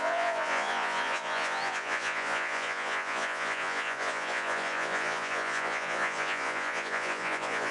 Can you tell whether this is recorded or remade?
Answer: remade